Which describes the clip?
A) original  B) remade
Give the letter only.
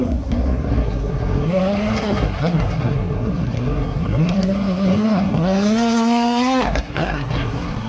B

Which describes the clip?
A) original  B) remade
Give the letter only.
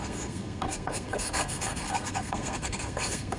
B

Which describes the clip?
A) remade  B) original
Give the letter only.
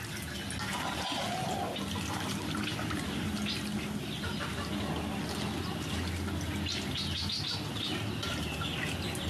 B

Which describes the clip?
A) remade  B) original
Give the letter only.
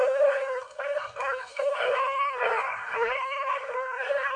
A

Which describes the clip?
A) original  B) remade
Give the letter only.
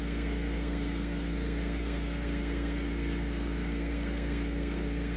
B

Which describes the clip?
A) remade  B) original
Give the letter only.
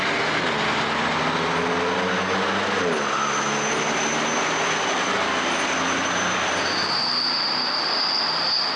B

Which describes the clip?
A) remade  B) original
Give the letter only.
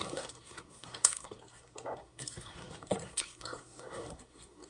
A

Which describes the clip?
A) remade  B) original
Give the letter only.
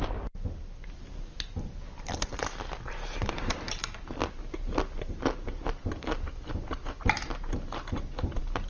B